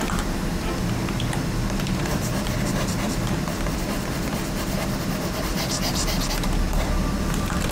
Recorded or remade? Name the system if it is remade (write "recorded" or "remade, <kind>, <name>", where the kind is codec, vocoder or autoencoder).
remade, vocoder, BigVGAN v2